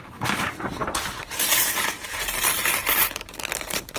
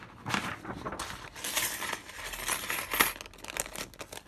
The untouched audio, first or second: second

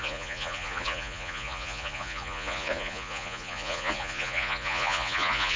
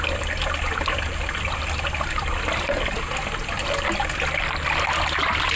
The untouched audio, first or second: second